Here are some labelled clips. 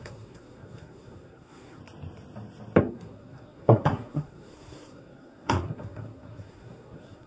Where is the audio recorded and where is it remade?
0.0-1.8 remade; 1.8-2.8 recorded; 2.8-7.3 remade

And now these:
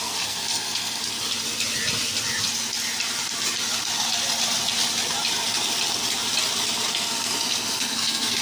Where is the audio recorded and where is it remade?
0.0-1.0 remade; 1.0-6.9 recorded; 6.9-8.4 remade

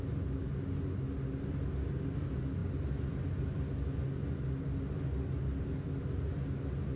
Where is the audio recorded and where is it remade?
0.0-7.0 recorded

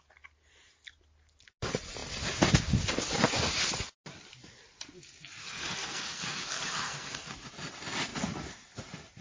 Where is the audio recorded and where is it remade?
0.0-5.4 recorded; 5.4-7.3 remade; 7.3-9.2 recorded

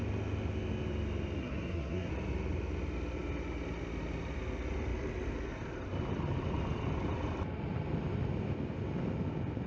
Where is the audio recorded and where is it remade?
0.0-1.4 recorded; 1.4-2.1 remade; 2.1-9.7 recorded

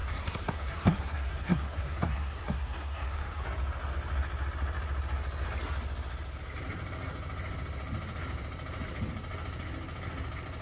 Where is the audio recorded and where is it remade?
0.0-3.4 remade; 3.4-10.6 recorded

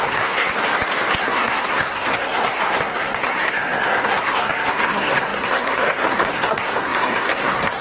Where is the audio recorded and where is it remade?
0.0-0.5 remade; 0.5-1.2 recorded; 1.2-7.8 remade